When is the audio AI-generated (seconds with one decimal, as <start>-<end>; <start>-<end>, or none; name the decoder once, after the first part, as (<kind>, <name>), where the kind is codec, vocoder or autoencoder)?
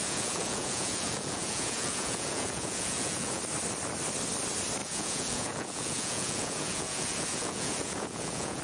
0.0-3.4 (vocoder, Vocos); 4.8-8.6